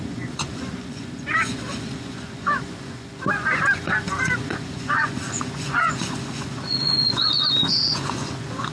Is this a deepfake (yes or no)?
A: yes